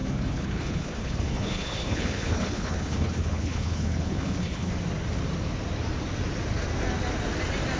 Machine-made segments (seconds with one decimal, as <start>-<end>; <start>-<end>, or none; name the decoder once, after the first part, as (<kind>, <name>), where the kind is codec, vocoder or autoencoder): 0.0-4.7 (codec, HILCodec)